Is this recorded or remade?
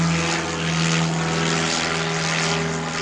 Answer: recorded